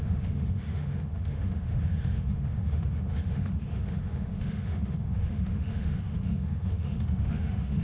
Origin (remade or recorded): remade